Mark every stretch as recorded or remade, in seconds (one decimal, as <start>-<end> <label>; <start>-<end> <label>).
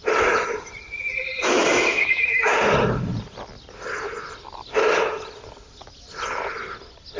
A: 0.0-1.9 recorded; 1.9-2.4 remade; 2.4-7.2 recorded